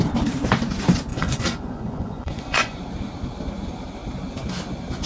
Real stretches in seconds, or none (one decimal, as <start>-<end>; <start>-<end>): 0.0-1.1; 2.8-5.1